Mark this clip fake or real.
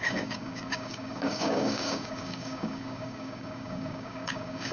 fake